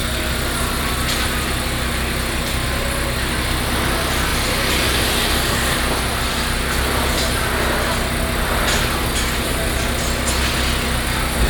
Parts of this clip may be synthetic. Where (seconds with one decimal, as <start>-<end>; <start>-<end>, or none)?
0.0-0.9